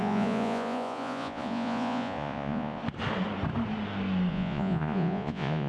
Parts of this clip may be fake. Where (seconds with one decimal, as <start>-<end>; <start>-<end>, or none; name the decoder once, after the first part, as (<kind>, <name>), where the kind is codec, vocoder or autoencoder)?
0.0-2.8 (vocoder, Vocos); 4.3-5.7